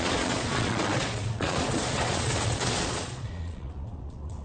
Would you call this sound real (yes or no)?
no